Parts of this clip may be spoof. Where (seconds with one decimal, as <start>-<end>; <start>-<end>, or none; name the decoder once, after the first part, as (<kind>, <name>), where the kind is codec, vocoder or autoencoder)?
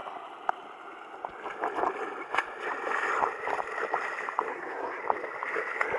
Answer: 4.5-5.0 (codec, SNAC)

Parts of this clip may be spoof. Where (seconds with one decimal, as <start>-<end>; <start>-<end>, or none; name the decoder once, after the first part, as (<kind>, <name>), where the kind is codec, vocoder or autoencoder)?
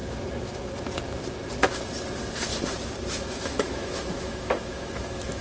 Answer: 3.2-5.4 (autoencoder, DAC-VAE)